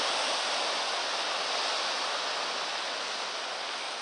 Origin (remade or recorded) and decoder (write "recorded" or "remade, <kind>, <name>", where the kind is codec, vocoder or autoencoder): recorded